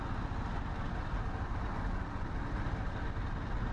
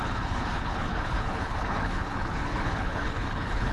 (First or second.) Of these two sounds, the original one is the first